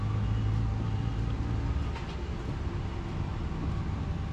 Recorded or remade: recorded